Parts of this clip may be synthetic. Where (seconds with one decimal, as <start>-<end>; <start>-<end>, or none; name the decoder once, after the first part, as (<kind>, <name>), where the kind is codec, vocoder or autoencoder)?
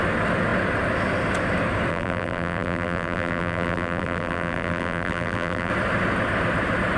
1.9-5.7 (vocoder, BigVGAN v2)